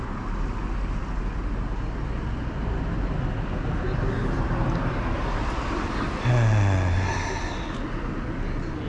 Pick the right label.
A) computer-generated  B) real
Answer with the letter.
B